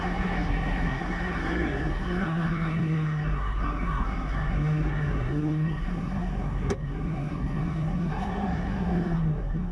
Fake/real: fake